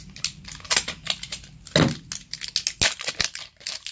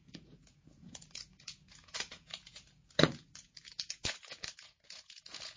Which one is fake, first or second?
second